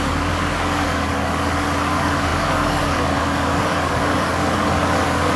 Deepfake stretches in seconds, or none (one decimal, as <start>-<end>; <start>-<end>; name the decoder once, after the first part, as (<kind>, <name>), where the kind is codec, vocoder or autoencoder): 0.0-5.4 (codec, DAC)